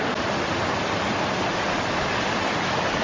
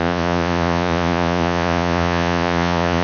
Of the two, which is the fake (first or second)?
second